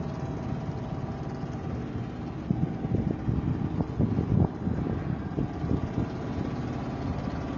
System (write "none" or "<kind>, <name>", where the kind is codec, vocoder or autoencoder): none